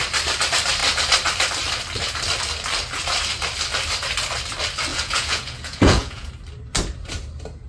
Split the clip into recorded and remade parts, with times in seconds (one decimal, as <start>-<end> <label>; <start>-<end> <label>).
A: 0.0-4.9 recorded; 4.9-6.3 remade; 6.3-7.7 recorded